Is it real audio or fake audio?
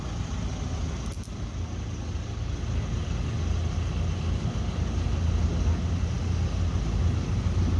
real